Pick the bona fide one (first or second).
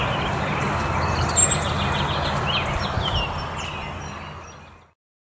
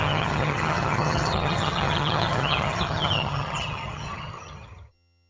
first